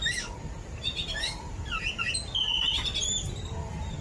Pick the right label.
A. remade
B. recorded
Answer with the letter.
B